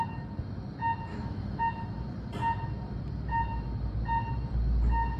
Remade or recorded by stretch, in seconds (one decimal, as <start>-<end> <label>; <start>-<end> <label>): 0.0-1.1 recorded; 1.1-1.6 remade; 1.6-5.2 recorded